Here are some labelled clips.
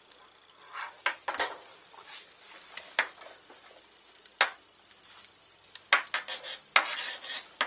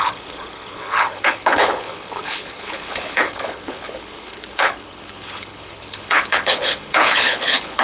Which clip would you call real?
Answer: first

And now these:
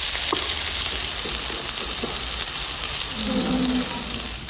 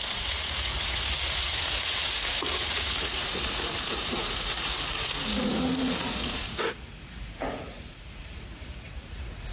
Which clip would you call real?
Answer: first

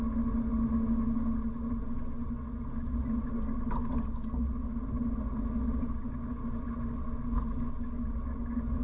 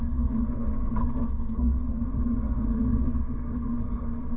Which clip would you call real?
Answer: first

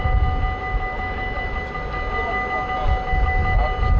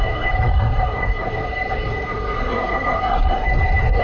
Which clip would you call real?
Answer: first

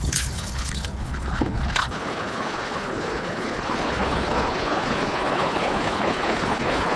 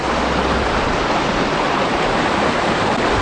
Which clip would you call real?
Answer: second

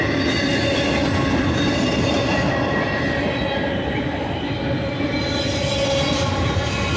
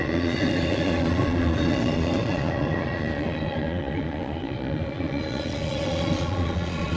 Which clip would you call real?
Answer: first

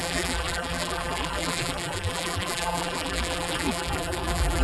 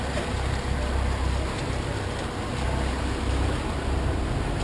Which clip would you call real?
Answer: second